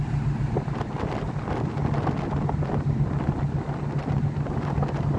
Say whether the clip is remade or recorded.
recorded